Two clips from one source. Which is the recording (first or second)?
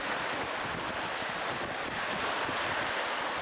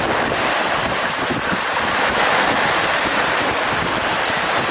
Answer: first